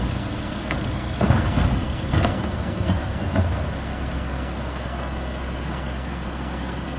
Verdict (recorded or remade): remade